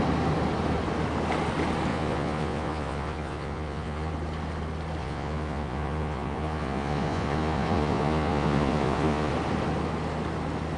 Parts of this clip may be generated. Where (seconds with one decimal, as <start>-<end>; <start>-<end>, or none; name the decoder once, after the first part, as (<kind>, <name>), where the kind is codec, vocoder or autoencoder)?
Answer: 1.9-4.1 (vocoder, Vocos); 5.0-9.3